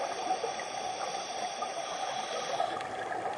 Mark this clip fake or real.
real